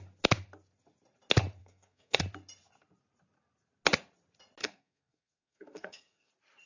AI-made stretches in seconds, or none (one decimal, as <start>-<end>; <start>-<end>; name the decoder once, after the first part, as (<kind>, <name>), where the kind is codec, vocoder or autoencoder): 1.6-2.2 (codec, SNAC); 4.6-6.3